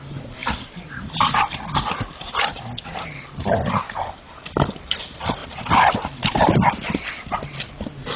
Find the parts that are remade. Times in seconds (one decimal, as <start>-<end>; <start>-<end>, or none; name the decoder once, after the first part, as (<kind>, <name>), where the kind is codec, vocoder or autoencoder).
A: 0.4-2.6 (vocoder, BigVGAN v2); 5.4-7.7